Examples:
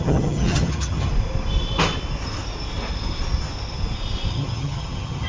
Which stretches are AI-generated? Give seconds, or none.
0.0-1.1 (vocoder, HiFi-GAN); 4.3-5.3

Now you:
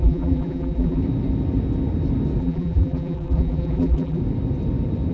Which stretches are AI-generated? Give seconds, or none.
0.0-1.0 (vocoder, BigVGAN v2); 2.4-4.2

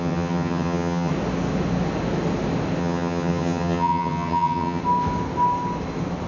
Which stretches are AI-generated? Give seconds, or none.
0.0-1.1 (vocoder, HiFi-GAN); 2.8-4.8

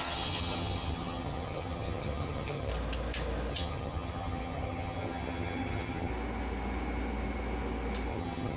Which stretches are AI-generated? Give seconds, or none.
0.0-2.7 (vocoder, HiFi-GAN); 3.5-6.1; 8.1-8.6

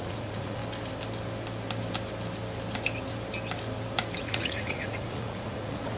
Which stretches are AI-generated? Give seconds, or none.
0.0-0.6 (vocoder, Vocos); 4.2-6.0

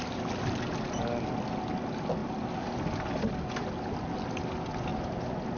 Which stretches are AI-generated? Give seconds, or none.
4.9-5.6 (vocoder, BigVGAN v2)

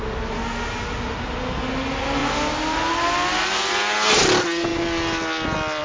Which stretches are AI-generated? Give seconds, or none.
none

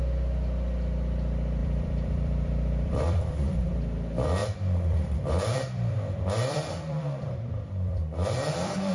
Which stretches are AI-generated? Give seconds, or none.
1.6-3.6 (vocoder, BigVGAN v2); 4.4-8.9